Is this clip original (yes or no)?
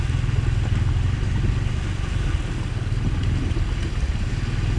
yes